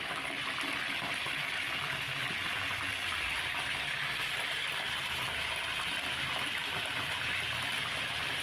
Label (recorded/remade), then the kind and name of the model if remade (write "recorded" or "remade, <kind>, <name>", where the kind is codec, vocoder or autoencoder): remade, vocoder, BigVGAN v2